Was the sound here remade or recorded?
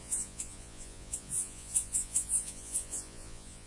remade